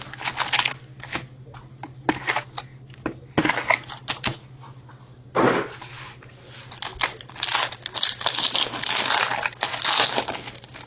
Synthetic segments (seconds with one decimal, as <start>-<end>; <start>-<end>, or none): none